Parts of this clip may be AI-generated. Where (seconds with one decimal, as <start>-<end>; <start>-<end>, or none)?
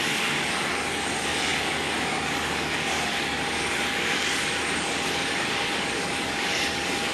0.0-7.1